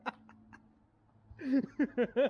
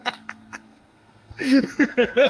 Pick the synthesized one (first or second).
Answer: second